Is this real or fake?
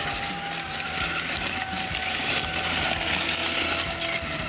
real